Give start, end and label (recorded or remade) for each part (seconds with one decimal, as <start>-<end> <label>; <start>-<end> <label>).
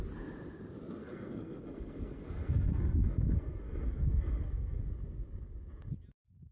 0.0-1.0 recorded; 1.0-4.9 remade; 4.9-6.5 recorded